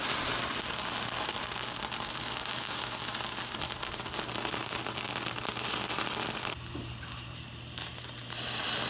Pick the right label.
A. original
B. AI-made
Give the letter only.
A